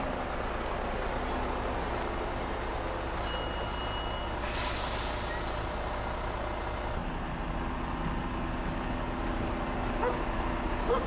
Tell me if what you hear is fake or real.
real